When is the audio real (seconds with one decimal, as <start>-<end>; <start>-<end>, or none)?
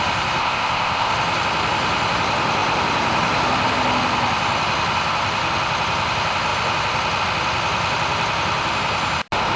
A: 0.0-0.4; 1.1-9.6